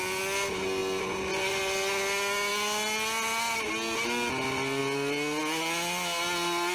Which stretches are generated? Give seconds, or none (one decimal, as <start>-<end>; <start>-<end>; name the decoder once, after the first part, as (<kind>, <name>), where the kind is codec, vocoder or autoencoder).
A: none